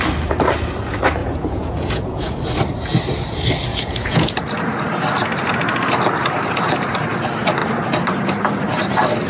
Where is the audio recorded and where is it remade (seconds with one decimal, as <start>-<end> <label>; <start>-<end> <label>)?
0.0-1.2 recorded; 1.2-2.4 remade; 2.4-3.7 recorded; 3.7-4.3 remade; 4.3-9.3 recorded